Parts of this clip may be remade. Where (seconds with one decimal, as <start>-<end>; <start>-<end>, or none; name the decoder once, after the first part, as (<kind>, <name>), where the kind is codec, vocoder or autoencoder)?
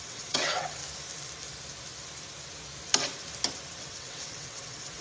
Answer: 0.0-0.8 (vocoder, WaveNeXt); 3.8-5.0